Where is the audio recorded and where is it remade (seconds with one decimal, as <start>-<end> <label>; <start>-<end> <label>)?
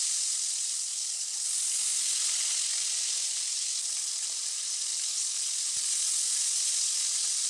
0.0-0.9 recorded; 0.9-1.5 remade; 1.5-4.9 recorded; 4.9-5.4 remade; 5.4-7.5 recorded